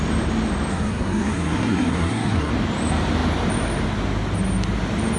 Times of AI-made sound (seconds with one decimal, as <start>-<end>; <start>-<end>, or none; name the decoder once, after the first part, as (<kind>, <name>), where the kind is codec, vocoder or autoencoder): 0.7-2.5 (codec, SNAC)

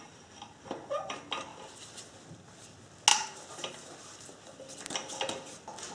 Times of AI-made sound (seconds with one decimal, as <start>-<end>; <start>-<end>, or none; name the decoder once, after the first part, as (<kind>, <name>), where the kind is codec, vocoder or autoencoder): 3.1-5.3 (vocoder, BigVGAN v2)

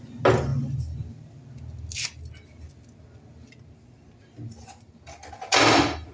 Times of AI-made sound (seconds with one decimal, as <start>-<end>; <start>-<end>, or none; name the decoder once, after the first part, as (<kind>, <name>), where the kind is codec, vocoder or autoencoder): none

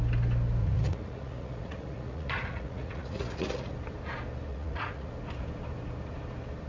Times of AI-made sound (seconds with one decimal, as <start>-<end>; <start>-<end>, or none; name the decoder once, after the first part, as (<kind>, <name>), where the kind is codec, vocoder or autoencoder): 0.6-3.7 (vocoder, Vocos); 4.5-5.1

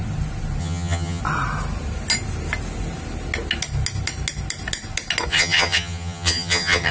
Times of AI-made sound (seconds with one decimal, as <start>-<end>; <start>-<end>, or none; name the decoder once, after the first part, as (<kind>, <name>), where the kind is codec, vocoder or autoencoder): 0.6-1.2 (vocoder, HiFi-GAN); 5.3-6.9

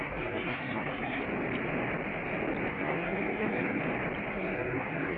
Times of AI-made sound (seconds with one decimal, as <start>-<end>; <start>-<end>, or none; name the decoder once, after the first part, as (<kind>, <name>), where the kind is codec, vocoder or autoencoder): 0.0-1.2 (codec, SNAC); 2.7-3.8; 4.3-5.2

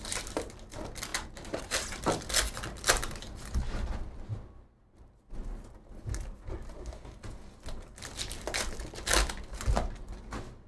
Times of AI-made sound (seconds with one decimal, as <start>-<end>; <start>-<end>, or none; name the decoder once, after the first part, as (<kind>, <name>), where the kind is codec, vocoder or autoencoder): none

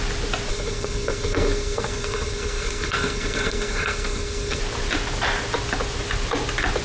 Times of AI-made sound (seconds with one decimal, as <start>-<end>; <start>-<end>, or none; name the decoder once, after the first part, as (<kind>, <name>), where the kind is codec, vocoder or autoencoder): 0.5-4.6 (codec, SNAC)